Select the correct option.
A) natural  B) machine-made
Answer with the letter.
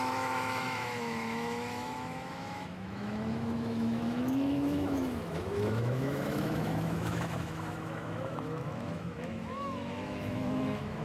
B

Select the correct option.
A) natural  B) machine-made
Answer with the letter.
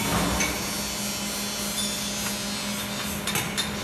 A